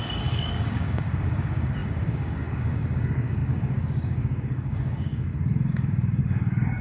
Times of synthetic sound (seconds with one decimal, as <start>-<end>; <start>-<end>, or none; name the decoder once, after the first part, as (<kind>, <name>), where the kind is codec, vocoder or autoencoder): 0.0-6.8 (codec, DAC)